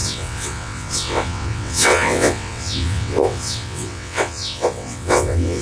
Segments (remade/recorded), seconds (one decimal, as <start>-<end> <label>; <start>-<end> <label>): 0.0-5.6 remade